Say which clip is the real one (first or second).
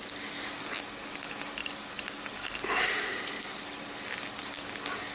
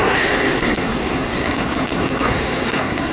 first